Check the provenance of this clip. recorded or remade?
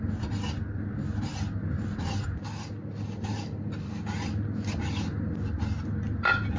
recorded